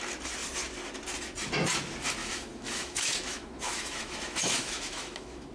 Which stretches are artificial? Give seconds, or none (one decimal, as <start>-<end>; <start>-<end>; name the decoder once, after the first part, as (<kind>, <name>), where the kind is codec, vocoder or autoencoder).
2.2-5.5 (autoencoder, DAC-VAE)